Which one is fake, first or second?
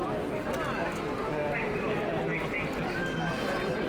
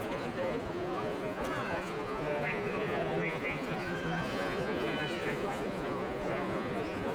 second